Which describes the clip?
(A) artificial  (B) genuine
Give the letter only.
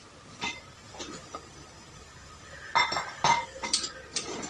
B